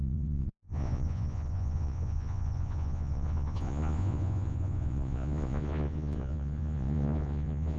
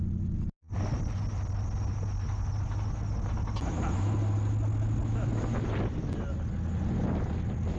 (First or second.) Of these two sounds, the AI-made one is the first